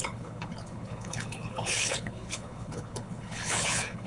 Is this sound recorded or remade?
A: remade